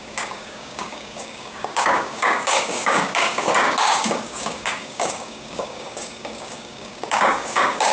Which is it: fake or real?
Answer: fake